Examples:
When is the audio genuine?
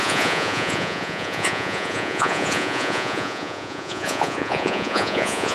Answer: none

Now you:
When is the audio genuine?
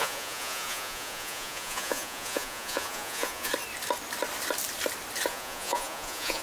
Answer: 3.5-5.3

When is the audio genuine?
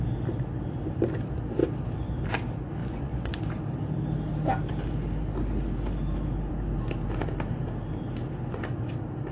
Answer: 0.0-2.8; 3.4-9.3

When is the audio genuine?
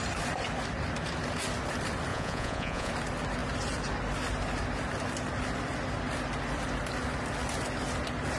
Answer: 0.0-2.1; 2.9-8.4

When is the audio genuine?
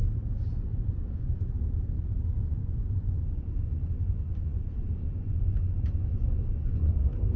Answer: 0.0-0.8; 1.4-2.6; 7.0-7.4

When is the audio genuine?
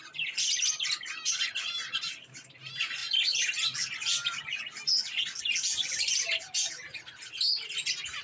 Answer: 0.0-8.2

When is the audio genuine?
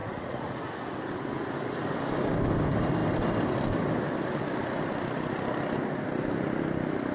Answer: 0.6-7.1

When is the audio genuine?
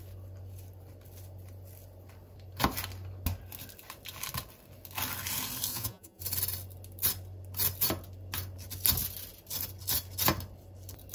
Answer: 0.0-5.7; 6.2-11.1